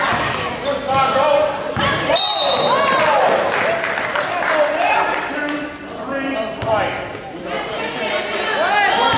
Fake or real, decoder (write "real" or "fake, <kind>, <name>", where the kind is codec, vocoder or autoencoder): real